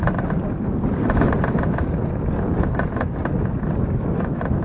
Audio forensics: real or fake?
real